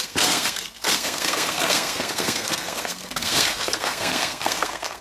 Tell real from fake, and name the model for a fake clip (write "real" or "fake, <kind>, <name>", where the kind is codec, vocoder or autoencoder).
fake, codec, SNAC